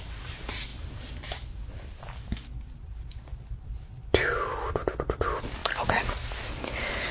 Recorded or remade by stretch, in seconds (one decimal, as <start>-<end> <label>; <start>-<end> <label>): 0.0-5.6 recorded; 5.6-6.3 remade; 6.3-7.1 recorded